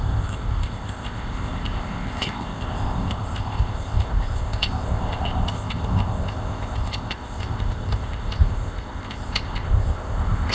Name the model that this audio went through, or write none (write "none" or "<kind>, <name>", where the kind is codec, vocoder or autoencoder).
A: codec, ZipCodec